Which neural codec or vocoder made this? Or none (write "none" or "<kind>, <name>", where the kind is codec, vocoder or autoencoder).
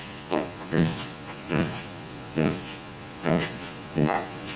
vocoder, Vocos